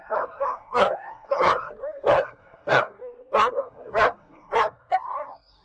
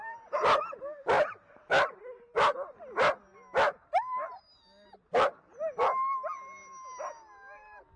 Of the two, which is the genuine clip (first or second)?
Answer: second